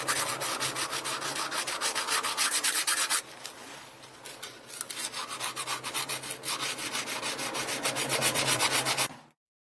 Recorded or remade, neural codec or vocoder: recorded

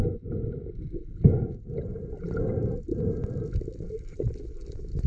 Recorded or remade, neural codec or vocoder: remade, vocoder, BigVGAN v2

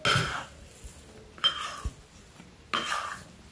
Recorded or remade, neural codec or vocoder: recorded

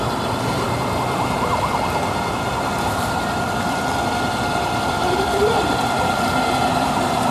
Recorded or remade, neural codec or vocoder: remade, vocoder, BigVGAN v2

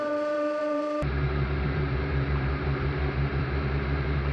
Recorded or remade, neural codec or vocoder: remade, vocoder, BigVGAN v2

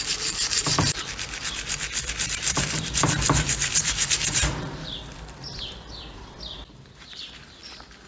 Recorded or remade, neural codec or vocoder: remade, vocoder, BigVGAN v2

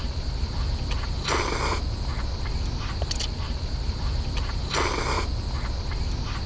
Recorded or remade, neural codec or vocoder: recorded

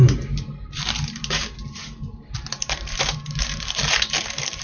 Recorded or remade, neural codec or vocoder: remade, vocoder, BigVGAN v2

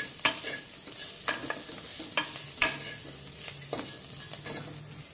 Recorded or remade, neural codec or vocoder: recorded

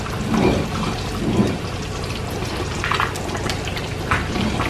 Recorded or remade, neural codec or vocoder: remade, vocoder, BigVGAN v2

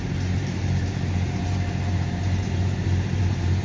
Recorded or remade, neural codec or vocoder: remade, vocoder, BigVGAN v2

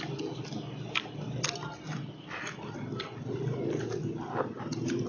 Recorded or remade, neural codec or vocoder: recorded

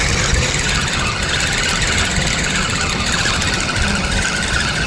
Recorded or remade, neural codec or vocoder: recorded